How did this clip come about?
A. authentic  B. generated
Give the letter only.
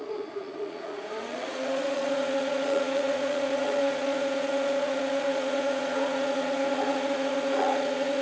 B